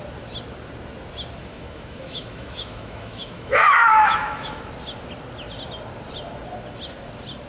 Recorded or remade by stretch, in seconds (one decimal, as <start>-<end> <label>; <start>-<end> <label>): 0.0-1.4 recorded; 1.4-4.6 remade; 4.6-7.5 recorded